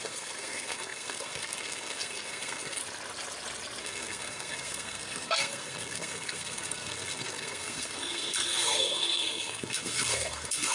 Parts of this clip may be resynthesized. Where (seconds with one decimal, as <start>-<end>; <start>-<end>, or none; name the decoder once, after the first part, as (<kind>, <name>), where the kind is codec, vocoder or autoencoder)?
0.0-2.8 (codec, SNAC); 3.8-10.7